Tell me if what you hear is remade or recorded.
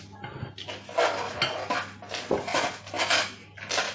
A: recorded